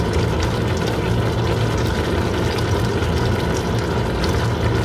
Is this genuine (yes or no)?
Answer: yes